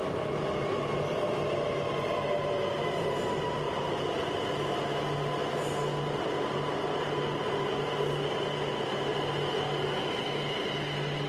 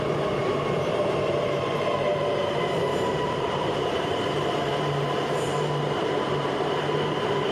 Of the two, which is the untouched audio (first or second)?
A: first